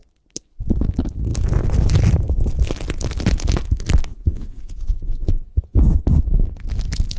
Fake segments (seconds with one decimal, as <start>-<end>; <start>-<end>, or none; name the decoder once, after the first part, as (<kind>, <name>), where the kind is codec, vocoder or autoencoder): 4.1-6.0 (vocoder, Vocos)